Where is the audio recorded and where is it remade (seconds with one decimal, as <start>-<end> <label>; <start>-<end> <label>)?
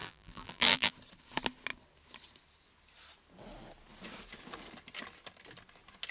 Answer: 0.0-0.9 remade; 0.9-6.1 recorded